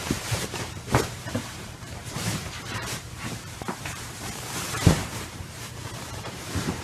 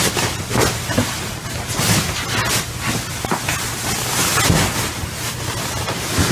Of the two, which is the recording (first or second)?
second